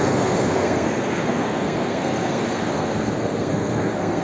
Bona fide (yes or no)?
no